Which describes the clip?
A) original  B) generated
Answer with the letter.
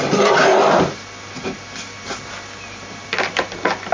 A